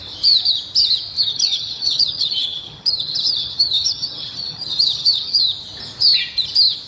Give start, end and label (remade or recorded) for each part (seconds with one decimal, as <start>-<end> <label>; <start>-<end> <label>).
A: 0.0-1.3 recorded; 1.3-5.4 remade; 5.4-6.9 recorded